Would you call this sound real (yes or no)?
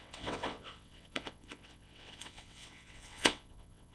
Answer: no